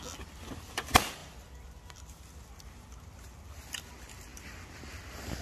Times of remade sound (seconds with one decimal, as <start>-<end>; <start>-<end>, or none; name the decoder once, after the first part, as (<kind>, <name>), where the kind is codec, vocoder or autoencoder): none